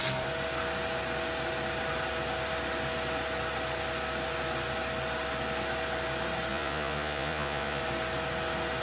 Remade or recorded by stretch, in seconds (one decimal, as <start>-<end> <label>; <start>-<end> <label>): 0.0-6.5 recorded; 6.5-7.8 remade; 7.8-8.8 recorded